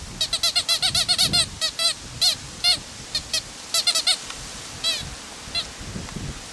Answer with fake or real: real